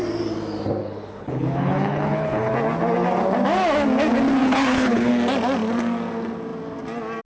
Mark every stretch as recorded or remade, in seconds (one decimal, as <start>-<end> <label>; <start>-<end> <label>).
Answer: 0.0-0.8 recorded; 0.8-2.5 remade; 2.5-4.4 recorded; 4.4-5.1 remade; 5.1-7.2 recorded